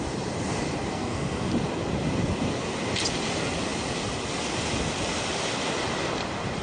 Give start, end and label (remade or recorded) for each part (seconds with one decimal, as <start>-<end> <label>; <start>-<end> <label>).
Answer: 0.0-0.9 recorded; 0.9-1.5 remade; 1.5-6.6 recorded